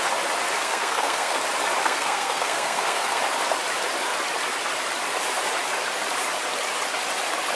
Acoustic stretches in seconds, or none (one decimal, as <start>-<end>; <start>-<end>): 0.0-0.6; 1.4-1.8; 3.2-7.6